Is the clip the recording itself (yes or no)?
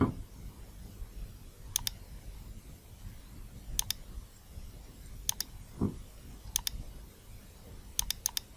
yes